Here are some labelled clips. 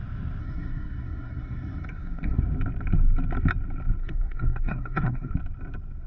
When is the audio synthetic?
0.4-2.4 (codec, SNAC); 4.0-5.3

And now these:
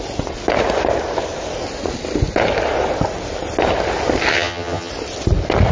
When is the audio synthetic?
4.3-4.9 (vocoder, HiFi-GAN)